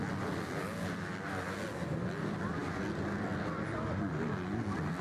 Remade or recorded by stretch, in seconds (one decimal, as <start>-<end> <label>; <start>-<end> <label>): 0.0-5.0 recorded